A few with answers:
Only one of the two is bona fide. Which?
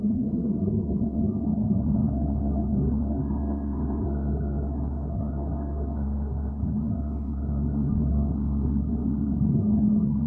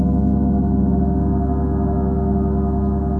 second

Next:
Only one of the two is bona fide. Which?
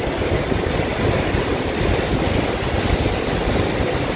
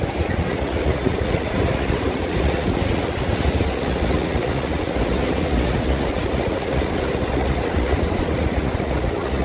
first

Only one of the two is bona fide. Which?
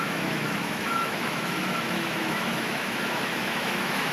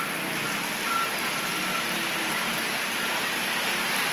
second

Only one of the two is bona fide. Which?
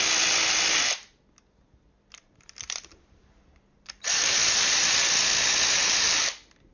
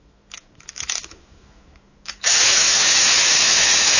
first